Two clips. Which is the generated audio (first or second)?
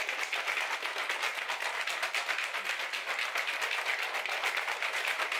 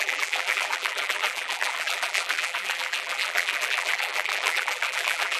second